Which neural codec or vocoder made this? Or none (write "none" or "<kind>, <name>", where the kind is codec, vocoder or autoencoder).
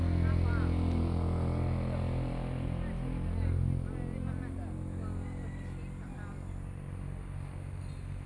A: none